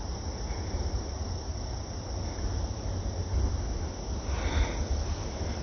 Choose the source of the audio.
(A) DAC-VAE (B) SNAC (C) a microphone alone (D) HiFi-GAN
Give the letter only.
C